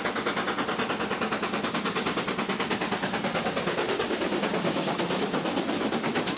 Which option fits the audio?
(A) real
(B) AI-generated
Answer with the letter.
A